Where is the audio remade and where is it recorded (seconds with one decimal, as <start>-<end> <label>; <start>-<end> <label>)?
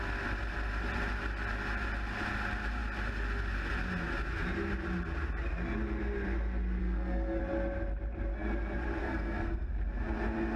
0.0-6.8 recorded; 6.8-7.4 remade; 7.4-9.0 recorded; 9.0-9.7 remade; 9.7-10.6 recorded